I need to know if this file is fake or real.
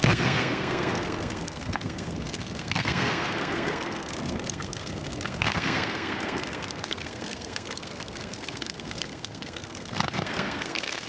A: fake